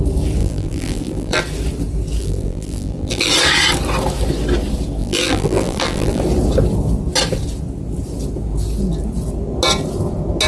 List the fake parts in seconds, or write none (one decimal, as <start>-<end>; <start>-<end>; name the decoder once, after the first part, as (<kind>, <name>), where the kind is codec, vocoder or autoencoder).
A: 0.4-1.4 (vocoder, BigVGAN v2); 2.2-3.3; 5.0-6.2